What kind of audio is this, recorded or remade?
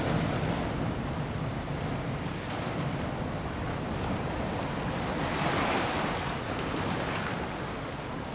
recorded